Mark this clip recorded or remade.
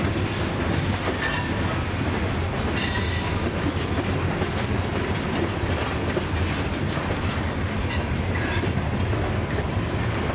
recorded